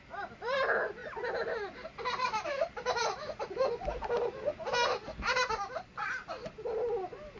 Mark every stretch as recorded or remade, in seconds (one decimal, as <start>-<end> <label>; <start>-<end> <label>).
0.0-7.4 recorded